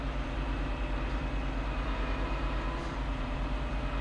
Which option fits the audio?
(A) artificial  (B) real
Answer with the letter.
A